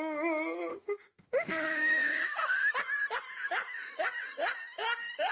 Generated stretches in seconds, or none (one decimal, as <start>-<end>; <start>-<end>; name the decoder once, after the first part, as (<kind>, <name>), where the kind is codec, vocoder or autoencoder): 0.7-2.7 (autoencoder, DAC-VAE)

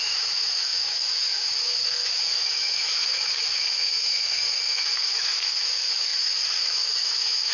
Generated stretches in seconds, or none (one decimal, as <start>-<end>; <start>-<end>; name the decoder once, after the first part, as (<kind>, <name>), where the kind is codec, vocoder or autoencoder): 0.0-7.5 (autoencoder, DAC-VAE)